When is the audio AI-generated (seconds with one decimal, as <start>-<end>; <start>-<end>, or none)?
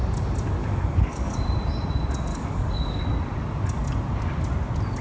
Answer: 0.6-1.4; 2.3-3.0